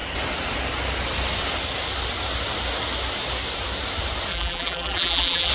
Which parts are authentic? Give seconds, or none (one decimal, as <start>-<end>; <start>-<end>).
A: 0.0-4.3